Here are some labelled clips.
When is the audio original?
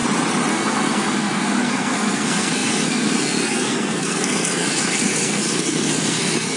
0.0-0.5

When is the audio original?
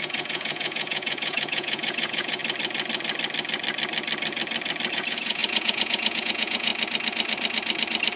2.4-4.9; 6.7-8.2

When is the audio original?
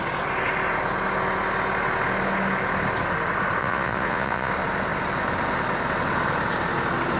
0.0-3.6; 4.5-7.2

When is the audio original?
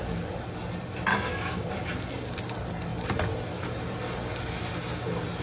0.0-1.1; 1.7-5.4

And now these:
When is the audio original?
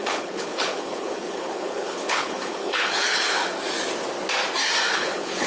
3.4-4.9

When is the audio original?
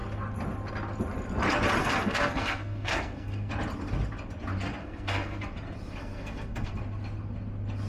0.0-1.8; 3.5-4.8; 5.4-6.0; 6.8-7.9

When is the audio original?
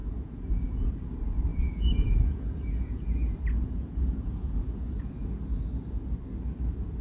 1.0-1.5; 5.4-7.0